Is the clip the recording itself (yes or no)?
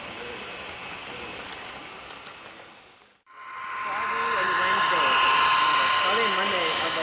yes